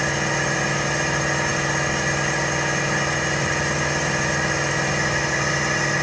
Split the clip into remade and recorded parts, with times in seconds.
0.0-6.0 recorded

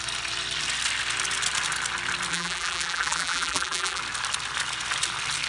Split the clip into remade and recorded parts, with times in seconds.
0.0-2.3 recorded; 2.3-4.0 remade; 4.0-5.5 recorded

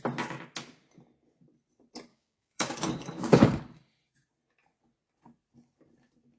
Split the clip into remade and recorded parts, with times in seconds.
0.0-2.1 recorded; 2.1-3.6 remade; 3.6-6.4 recorded

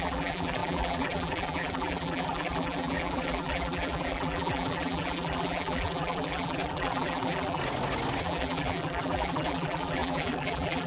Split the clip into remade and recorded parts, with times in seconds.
0.0-7.6 remade; 7.6-8.2 recorded; 8.2-10.9 remade

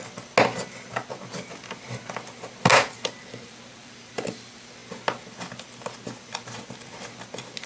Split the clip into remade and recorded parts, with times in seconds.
0.0-2.7 recorded; 2.7-4.1 remade; 4.1-7.7 recorded